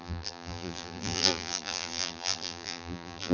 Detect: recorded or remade remade